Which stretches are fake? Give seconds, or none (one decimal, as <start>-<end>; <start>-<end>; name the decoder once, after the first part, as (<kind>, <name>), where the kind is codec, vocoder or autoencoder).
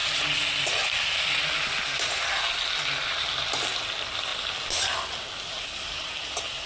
none